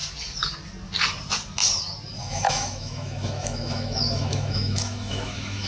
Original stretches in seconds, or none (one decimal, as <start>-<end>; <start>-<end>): 0.0-2.2